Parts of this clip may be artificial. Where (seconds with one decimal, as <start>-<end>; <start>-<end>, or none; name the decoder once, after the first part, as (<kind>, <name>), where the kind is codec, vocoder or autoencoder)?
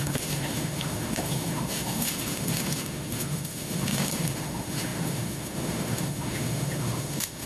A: 0.0-7.5 (autoencoder, DAC-VAE)